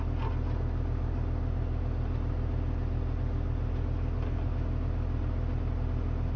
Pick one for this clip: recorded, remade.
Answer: recorded